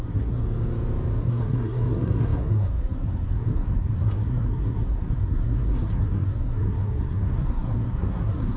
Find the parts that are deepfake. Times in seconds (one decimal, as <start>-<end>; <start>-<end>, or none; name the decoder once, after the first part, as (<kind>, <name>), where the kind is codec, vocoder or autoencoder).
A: 0.0-0.4 (codec, SNAC); 1.2-8.6